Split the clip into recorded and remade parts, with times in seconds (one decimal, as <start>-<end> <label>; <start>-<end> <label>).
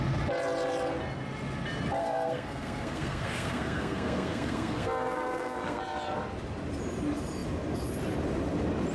0.0-2.0 recorded; 2.0-5.8 remade; 5.8-8.9 recorded